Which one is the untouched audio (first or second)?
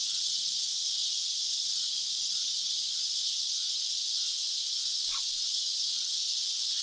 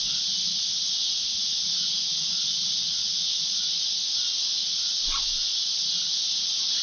second